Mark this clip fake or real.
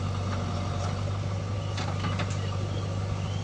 real